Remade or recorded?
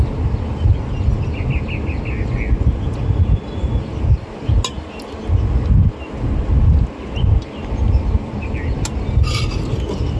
recorded